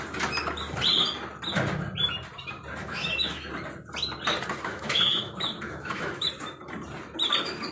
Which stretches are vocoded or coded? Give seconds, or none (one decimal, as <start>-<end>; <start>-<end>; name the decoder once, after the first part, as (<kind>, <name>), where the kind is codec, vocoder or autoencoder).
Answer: 2.8-3.5 (autoencoder, DAC-VAE); 4.6-6.3